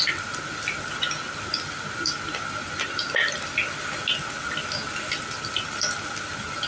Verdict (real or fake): real